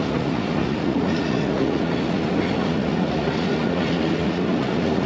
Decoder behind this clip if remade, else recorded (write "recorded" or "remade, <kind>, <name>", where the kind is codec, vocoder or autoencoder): remade, vocoder, Vocos